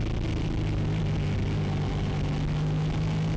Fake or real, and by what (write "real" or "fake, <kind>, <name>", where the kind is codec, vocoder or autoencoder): real